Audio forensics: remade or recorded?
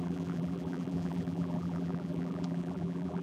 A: remade